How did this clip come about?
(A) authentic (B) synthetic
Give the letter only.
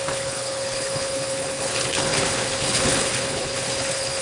B